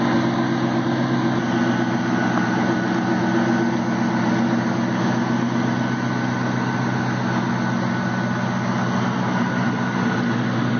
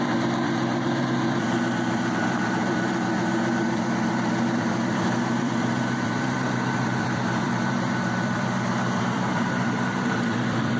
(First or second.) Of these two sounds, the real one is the first